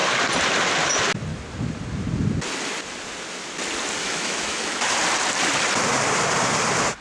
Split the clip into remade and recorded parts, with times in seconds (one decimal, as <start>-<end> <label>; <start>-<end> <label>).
0.0-4.0 recorded; 4.0-4.9 remade; 4.9-7.0 recorded